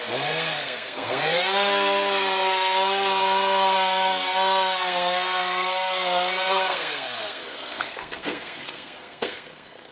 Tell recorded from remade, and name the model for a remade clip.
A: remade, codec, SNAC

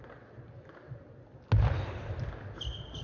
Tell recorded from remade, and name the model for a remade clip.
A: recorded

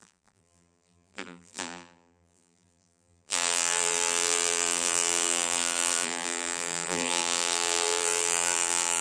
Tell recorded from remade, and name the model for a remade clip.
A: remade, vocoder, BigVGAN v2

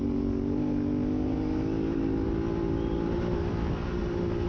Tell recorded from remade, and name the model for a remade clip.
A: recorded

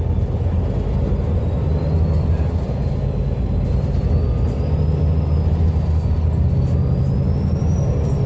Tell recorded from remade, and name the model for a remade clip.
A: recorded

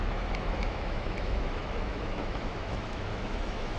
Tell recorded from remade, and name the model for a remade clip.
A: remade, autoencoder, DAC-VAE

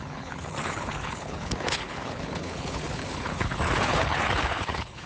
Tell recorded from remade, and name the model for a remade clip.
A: remade, codec, HILCodec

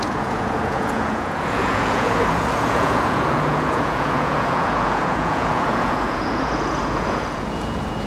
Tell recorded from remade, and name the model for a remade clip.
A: remade, vocoder, Vocos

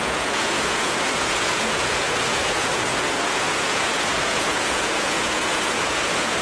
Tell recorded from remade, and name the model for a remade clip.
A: remade, vocoder, Vocos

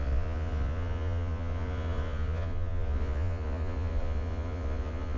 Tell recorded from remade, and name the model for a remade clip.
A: remade, vocoder, Vocos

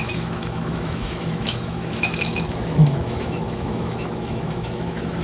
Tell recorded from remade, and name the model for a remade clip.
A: remade, autoencoder, DAC-VAE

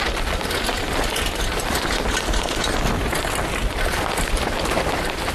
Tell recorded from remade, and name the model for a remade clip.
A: recorded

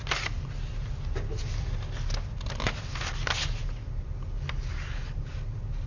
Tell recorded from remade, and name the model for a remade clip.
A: recorded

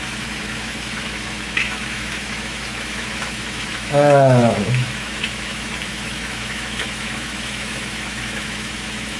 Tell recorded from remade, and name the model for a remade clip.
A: remade, autoencoder, DAC-VAE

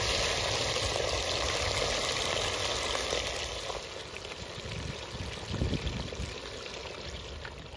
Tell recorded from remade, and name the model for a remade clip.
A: recorded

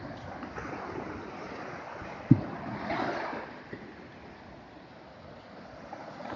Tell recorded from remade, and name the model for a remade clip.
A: recorded